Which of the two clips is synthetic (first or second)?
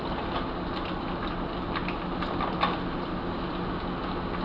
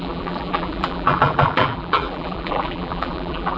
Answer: second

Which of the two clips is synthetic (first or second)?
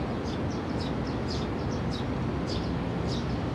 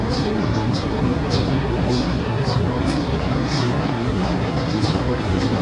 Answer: second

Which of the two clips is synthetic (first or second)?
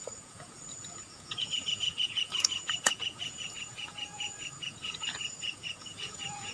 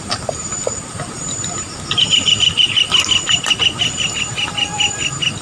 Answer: first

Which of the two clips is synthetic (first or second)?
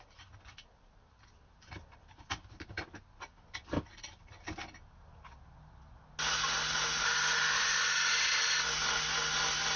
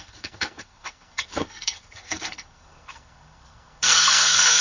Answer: second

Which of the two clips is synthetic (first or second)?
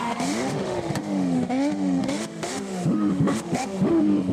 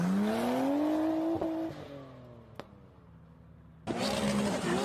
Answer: first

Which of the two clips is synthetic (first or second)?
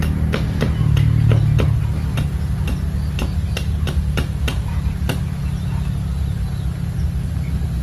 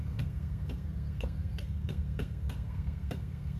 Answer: second